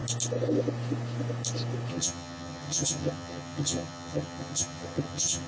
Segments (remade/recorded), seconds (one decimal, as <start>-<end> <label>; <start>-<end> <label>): 0.0-1.9 recorded; 1.9-5.5 remade